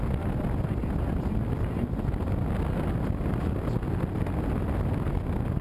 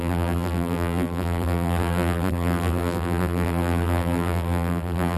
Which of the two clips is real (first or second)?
first